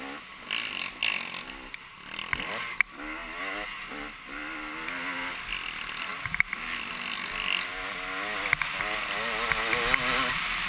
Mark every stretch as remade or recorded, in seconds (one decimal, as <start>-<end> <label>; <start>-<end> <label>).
0.0-10.7 recorded